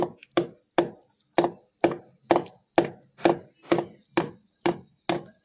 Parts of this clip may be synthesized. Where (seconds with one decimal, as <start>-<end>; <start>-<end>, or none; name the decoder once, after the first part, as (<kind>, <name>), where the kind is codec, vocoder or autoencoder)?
none